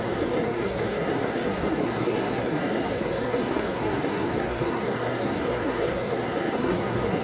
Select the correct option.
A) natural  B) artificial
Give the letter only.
B